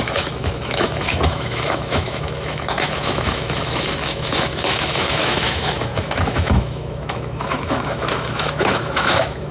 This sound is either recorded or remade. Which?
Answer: remade